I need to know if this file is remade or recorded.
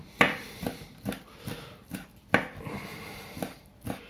remade